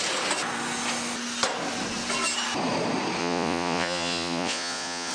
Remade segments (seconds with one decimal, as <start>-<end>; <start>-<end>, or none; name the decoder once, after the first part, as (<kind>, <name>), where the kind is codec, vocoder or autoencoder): 3.2-5.1 (vocoder, Vocos)